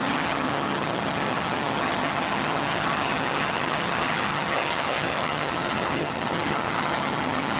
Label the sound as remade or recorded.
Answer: remade